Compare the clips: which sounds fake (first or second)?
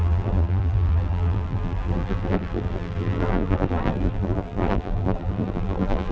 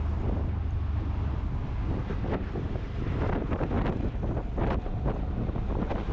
first